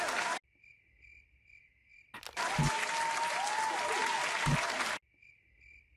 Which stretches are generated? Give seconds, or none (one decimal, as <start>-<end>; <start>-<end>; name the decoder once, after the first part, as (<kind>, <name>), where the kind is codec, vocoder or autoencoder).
none